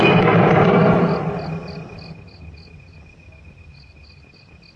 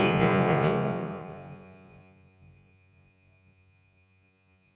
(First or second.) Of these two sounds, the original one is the first